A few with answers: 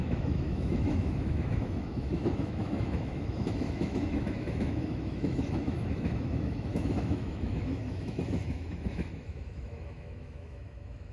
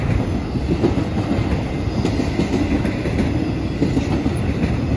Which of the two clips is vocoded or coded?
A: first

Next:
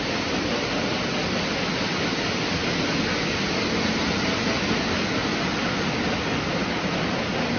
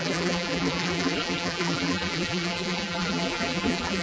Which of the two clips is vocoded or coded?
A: second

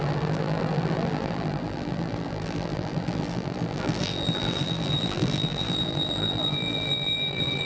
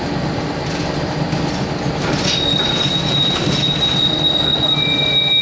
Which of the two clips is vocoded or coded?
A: first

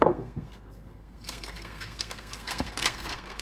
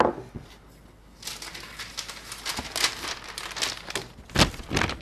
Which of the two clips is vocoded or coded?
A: first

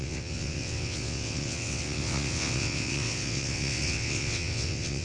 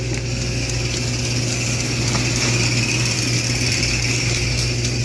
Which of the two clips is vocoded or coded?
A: first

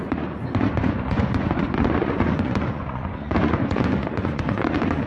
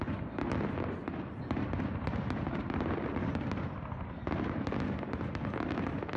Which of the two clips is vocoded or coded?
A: first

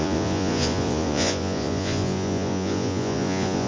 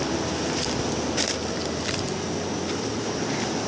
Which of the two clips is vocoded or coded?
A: first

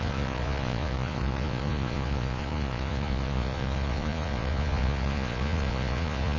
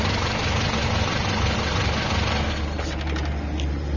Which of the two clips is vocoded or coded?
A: first